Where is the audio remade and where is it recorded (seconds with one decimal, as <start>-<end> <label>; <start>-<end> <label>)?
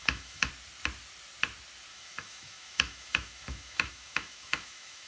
0.0-0.5 remade; 0.5-1.9 recorded; 1.9-5.1 remade